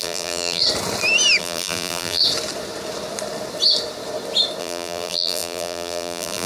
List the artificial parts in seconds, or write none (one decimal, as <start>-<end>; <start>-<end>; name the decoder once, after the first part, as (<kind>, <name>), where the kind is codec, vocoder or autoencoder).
0.0-0.6 (vocoder, BigVGAN v2); 1.4-2.2; 4.6-6.5

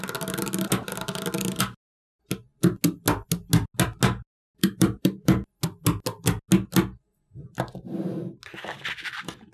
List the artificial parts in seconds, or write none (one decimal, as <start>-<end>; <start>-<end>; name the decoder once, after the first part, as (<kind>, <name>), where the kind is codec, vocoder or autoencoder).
4.6-5.5 (vocoder, BigVGAN v2)

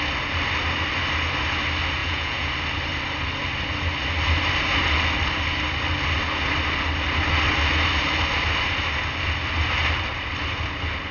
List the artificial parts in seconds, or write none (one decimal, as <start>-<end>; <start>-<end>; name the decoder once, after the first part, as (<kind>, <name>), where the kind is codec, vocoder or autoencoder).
2.0-2.5 (vocoder, Vocos)

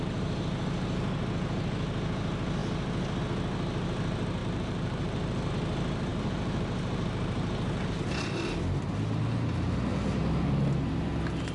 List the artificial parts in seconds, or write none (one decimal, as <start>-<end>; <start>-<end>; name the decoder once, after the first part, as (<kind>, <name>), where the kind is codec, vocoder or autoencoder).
4.4-5.5 (vocoder, BigVGAN v2); 6.1-8.5

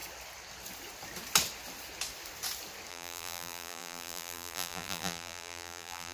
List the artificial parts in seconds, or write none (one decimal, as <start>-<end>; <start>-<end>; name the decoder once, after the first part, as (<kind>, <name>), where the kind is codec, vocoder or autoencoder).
2.9-6.1 (vocoder, BigVGAN v2)